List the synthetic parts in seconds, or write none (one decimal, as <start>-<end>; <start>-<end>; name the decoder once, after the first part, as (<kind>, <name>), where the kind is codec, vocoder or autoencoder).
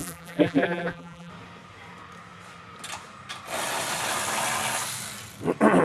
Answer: 0.0-1.3 (vocoder, BigVGAN v2)